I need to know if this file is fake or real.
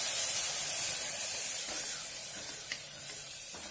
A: real